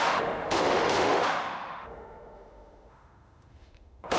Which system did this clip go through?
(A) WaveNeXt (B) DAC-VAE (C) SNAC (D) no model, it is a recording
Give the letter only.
B